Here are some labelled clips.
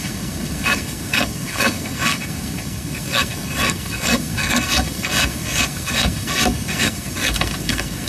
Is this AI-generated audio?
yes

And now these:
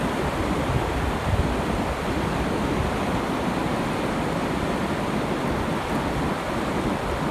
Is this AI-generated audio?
no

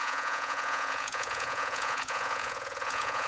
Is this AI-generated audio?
yes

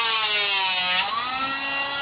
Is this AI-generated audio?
no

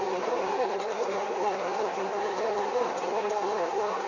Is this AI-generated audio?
yes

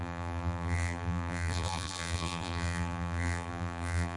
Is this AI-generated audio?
yes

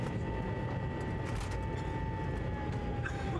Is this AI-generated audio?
no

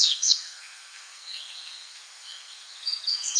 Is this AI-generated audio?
yes